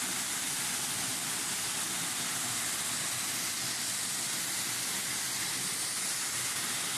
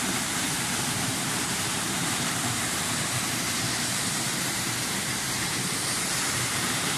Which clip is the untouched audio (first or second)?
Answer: first